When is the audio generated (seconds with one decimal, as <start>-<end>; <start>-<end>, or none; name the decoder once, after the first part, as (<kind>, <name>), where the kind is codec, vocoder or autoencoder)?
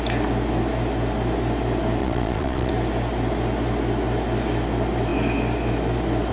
2.0-2.7 (vocoder, Vocos)